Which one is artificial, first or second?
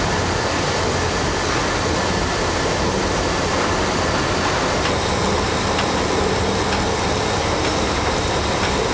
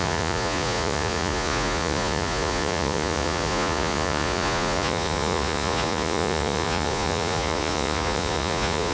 second